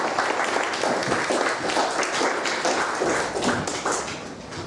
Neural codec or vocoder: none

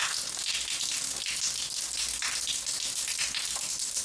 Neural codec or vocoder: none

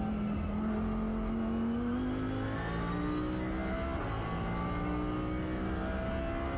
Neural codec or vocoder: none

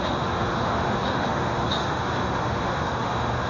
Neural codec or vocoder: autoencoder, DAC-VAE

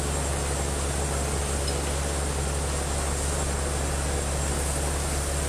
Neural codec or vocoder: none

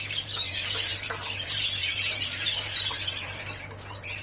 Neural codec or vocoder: vocoder, BigVGAN v2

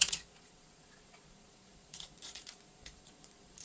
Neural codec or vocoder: vocoder, Vocos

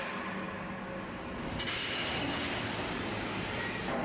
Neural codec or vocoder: none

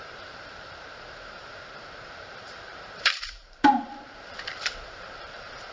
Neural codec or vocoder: vocoder, BigVGAN v2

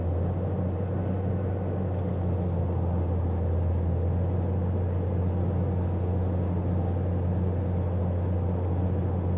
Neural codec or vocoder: none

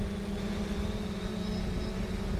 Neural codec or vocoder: none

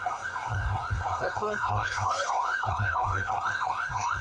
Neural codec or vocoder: codec, SNAC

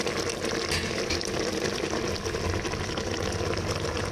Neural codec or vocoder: none